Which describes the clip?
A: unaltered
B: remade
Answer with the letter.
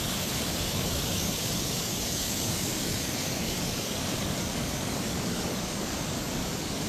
B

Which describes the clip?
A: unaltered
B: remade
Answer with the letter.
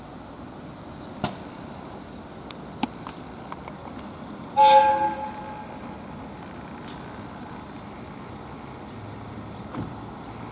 A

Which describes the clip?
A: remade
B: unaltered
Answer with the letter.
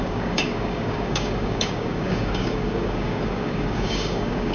A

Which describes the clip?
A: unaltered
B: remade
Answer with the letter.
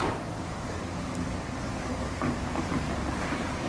B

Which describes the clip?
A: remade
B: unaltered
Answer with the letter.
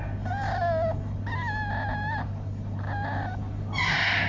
B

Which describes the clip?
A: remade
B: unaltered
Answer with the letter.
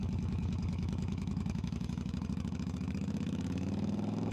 A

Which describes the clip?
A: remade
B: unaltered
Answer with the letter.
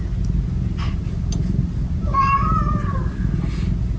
B